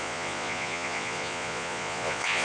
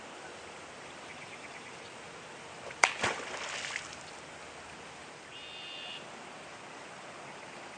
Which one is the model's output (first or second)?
first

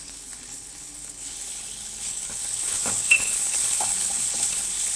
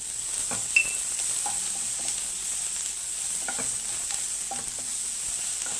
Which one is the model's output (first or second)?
first